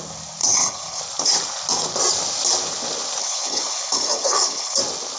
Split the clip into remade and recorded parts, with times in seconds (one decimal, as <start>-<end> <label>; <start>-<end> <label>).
0.0-0.4 recorded; 0.4-1.0 remade; 1.0-3.2 recorded; 3.2-4.8 remade; 4.8-5.2 recorded